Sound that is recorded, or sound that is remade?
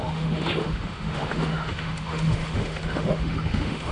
remade